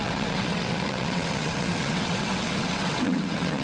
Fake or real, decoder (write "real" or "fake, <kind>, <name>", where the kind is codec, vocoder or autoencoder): fake, vocoder, WaveNeXt